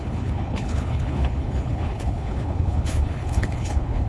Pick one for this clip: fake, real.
fake